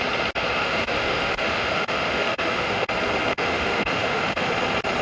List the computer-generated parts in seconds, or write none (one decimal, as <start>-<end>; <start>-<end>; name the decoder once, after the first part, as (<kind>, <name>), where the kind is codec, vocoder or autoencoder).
0.6-2.9 (autoencoder, DAC-VAE); 3.3-4.5